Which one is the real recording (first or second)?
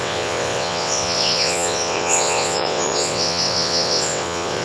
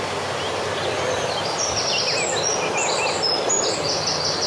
second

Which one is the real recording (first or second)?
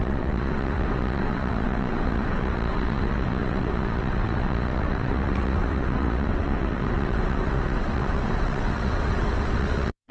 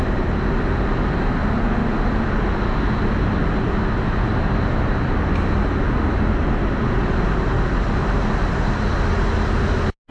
second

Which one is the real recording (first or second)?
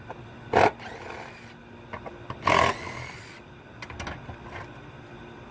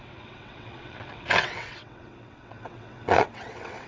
first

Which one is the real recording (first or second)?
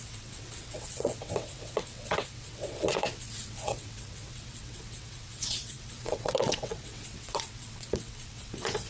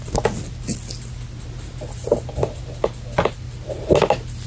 second